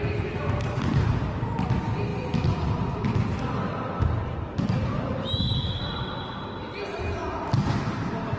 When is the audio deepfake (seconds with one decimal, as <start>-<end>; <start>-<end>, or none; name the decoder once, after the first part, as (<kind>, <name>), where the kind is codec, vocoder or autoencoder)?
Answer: none